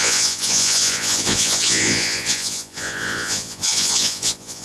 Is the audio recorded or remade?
remade